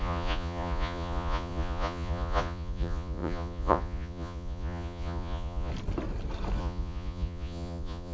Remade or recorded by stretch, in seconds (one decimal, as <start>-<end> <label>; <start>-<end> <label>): 0.0-5.7 remade; 5.7-6.6 recorded; 6.6-8.1 remade